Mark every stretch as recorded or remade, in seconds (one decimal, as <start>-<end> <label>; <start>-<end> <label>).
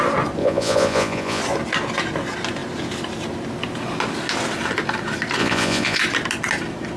0.0-0.4 recorded; 0.4-1.4 remade; 1.4-5.4 recorded; 5.4-6.0 remade; 6.0-7.0 recorded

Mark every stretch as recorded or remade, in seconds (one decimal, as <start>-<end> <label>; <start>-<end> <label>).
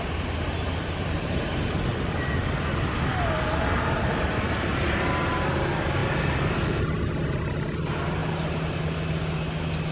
0.0-9.9 recorded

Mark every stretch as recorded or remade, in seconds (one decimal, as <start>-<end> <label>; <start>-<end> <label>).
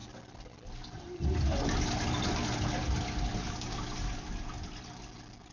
0.0-5.5 recorded